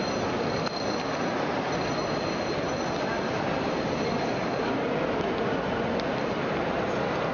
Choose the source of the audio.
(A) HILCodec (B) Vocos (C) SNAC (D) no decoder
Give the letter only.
D